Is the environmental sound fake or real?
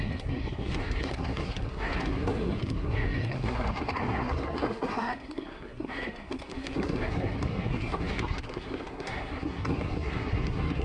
fake